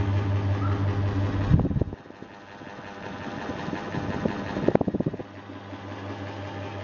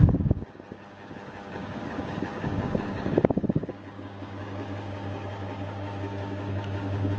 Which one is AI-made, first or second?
second